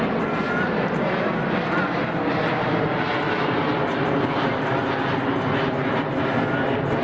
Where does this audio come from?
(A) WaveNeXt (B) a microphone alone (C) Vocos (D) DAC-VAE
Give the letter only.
B